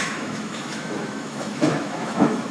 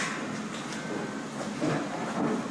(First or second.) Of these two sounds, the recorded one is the second